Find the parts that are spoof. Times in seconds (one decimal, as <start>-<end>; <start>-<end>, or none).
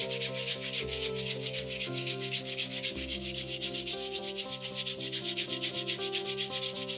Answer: 0.5-4.2